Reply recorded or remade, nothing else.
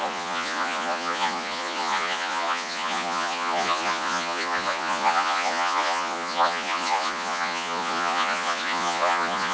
remade